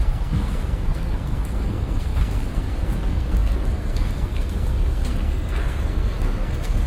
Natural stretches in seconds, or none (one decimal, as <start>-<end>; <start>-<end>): none

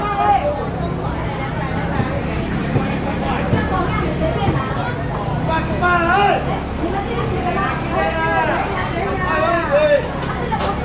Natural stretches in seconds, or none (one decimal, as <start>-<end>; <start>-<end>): 0.0-2.6; 3.5-10.8

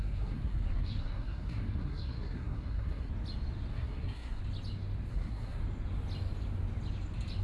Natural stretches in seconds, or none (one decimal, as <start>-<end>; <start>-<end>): 3.1-3.7; 4.4-5.1; 5.6-7.4

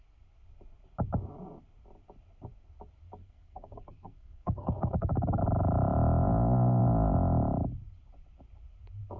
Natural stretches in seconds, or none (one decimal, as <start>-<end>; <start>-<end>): 0.0-3.2; 5.4-9.2

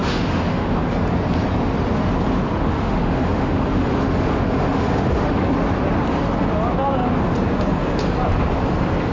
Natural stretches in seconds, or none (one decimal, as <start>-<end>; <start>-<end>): 0.8-2.7; 5.4-9.1